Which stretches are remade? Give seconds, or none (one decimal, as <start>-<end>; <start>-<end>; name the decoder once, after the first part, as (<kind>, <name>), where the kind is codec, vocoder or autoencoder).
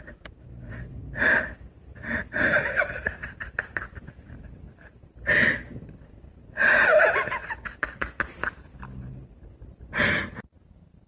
0.0-7.0 (vocoder, BigVGAN v2); 7.9-8.4; 9.0-11.1